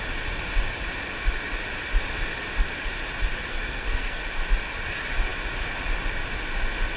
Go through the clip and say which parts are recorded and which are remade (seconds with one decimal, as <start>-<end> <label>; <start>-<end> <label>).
0.0-3.5 recorded; 3.5-4.2 remade; 4.2-7.0 recorded